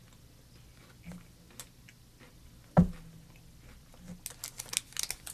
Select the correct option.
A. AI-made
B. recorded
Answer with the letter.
B